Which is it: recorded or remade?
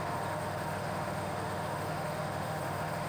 remade